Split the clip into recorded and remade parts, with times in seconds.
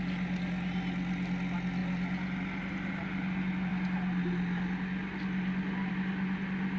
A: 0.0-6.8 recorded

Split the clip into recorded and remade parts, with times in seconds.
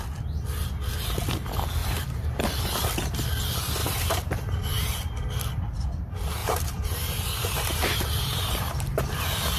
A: 0.0-1.8 recorded; 1.8-2.4 remade; 2.4-3.8 recorded; 3.8-4.9 remade; 4.9-6.4 recorded; 6.4-9.2 remade; 9.2-9.6 recorded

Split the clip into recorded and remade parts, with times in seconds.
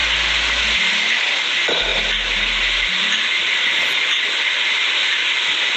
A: 0.0-5.8 recorded